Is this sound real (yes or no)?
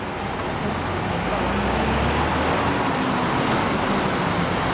yes